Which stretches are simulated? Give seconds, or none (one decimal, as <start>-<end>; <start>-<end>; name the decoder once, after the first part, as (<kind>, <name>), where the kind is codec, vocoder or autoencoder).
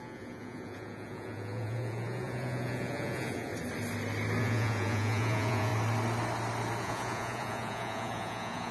0.0-3.5 (vocoder, Vocos); 4.4-5.7; 6.8-8.7